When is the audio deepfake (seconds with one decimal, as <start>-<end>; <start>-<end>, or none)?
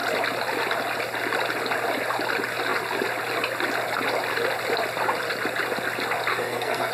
6.3-6.9